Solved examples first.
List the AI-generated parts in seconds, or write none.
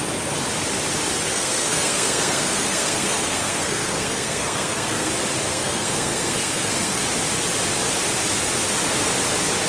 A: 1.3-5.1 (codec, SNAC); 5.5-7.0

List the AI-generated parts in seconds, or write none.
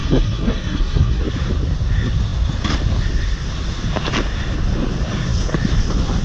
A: 0.0-1.2 (codec, SNAC)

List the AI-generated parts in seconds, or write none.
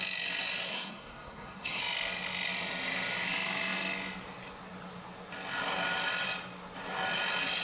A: 0.7-1.8 (codec, SNAC)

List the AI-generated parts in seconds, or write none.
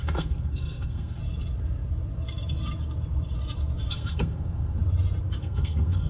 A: 0.0-1.2 (codec, SNAC); 3.9-4.8; 5.4-6.1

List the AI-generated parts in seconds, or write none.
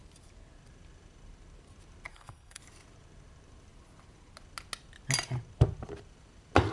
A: 2.1-2.6 (codec, SNAC)